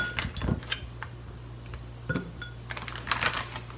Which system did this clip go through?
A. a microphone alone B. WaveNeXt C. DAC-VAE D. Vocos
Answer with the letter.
A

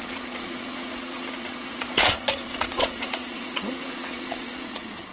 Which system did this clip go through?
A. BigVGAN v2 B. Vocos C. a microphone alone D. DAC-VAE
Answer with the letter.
B